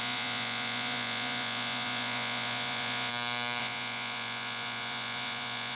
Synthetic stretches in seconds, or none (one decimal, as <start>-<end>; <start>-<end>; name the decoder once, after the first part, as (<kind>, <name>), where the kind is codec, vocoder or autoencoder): 0.0-3.1 (vocoder, Vocos); 3.6-5.7